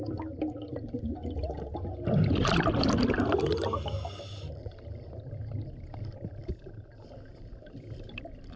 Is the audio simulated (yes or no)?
no